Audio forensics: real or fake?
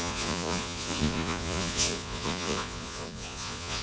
fake